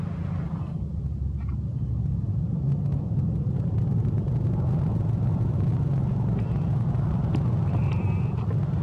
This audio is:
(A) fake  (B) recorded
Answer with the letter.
B